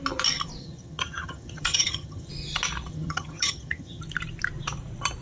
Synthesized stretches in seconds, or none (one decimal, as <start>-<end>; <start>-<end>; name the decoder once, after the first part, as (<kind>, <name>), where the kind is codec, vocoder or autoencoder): 0.6-2.3 (vocoder, HiFi-GAN); 2.9-4.0